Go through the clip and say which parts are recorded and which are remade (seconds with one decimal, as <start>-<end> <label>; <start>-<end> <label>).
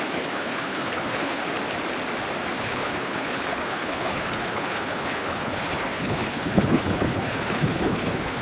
0.0-1.4 remade; 1.4-2.6 recorded; 2.6-8.4 remade